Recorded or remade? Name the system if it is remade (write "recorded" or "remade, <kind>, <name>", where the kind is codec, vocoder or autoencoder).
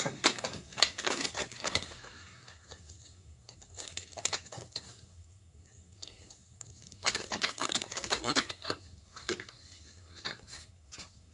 remade, codec, SNAC